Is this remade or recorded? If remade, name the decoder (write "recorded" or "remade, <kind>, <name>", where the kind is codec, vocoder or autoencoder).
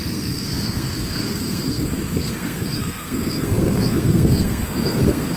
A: remade, codec, SNAC